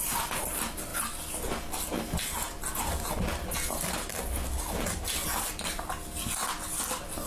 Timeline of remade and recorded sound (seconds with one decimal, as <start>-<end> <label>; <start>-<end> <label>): 0.0-7.3 recorded